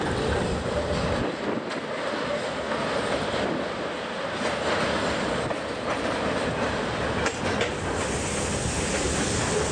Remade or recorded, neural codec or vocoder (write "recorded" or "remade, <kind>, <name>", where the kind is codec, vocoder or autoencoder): recorded